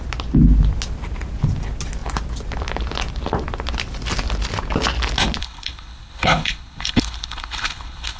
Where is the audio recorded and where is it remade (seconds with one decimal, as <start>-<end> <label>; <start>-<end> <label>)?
0.0-5.4 recorded; 5.4-8.2 remade